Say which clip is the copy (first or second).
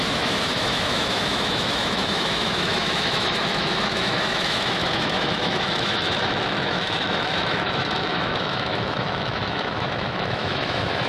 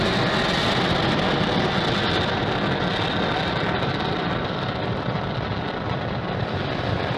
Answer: first